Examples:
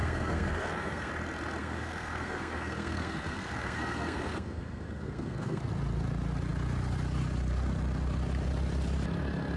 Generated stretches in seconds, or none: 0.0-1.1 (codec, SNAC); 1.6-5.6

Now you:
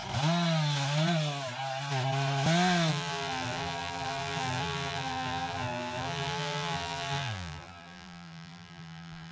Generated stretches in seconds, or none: 2.9-9.3 (vocoder, BigVGAN v2)

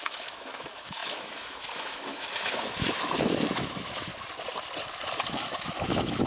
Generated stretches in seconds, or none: 0.0-4.1 (autoencoder, DAC-VAE); 5.3-6.3